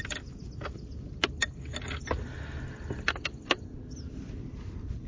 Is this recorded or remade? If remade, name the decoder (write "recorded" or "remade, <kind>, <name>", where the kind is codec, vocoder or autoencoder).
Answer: recorded